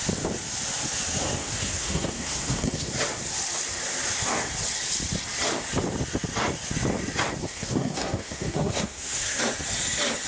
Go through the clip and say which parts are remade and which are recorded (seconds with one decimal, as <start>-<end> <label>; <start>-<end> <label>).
0.0-1.4 recorded; 1.4-2.9 remade; 2.9-7.4 recorded; 7.4-9.4 remade; 9.4-10.3 recorded